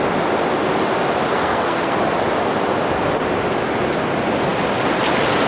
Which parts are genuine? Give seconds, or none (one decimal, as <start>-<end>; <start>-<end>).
0.0-1.3; 2.0-5.5